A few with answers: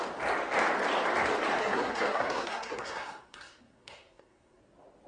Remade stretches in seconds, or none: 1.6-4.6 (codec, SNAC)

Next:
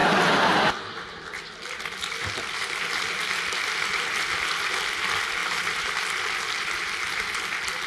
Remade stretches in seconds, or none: none

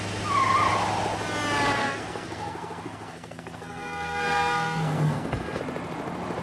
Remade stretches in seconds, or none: 1.8-5.6 (codec, SNAC)

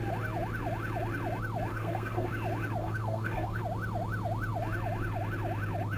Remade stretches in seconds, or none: 1.7-2.3 (codec, SNAC); 2.8-3.6

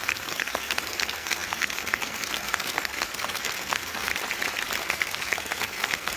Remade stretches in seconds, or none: 0.0-4.1 (codec, SNAC); 4.8-6.2

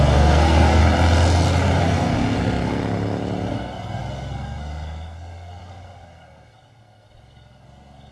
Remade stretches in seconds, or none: 0.0-0.8 (codec, SNAC); 1.8-2.8; 3.5-8.1